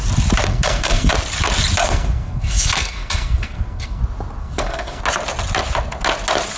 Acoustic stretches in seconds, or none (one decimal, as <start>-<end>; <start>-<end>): 0.0-0.5; 1.1-1.8; 4.0-4.4; 5.0-6.6